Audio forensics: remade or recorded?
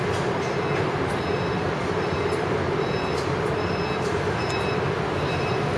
recorded